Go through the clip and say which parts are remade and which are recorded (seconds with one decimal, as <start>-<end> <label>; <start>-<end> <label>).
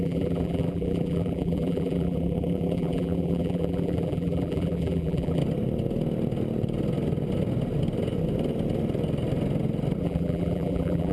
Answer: 0.0-5.4 remade; 5.4-10.0 recorded; 10.0-11.1 remade